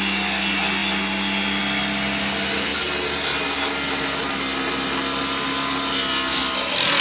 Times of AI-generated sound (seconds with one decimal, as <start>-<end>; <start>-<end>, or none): none